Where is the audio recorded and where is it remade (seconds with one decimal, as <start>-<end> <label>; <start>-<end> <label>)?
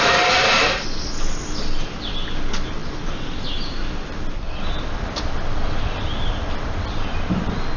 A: 0.0-7.8 recorded